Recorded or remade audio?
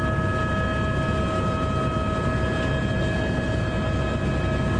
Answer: recorded